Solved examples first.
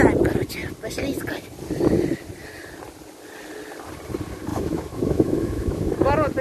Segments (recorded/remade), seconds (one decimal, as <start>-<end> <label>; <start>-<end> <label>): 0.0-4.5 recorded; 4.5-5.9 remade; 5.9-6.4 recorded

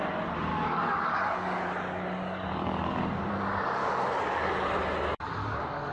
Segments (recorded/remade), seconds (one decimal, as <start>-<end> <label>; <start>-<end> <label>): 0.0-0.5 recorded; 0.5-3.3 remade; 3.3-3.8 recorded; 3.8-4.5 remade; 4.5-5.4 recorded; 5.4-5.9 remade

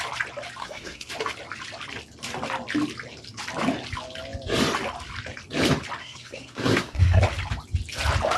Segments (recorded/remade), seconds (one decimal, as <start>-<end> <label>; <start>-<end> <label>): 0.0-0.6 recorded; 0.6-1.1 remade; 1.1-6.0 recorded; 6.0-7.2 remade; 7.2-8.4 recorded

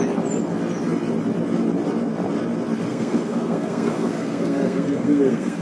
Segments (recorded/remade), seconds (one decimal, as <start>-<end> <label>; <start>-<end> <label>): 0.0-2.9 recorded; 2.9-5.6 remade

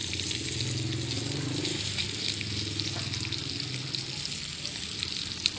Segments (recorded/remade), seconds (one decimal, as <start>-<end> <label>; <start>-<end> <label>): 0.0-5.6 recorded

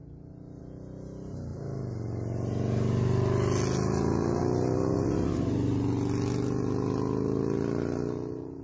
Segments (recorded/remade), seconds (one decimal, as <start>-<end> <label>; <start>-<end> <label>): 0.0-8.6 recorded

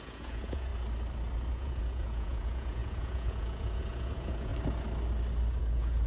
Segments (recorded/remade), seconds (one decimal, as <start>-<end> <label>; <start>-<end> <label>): 0.0-0.7 remade; 0.7-1.5 recorded; 1.5-4.5 remade; 4.5-5.6 recorded; 5.6-6.1 remade